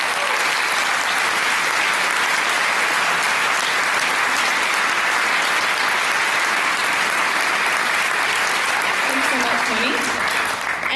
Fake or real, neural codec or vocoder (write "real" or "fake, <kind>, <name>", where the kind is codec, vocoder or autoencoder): real